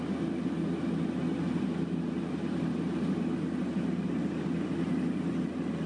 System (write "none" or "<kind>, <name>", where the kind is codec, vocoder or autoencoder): none